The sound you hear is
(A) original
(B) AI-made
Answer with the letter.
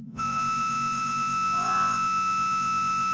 B